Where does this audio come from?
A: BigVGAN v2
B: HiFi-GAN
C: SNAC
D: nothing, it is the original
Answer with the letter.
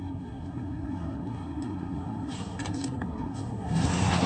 C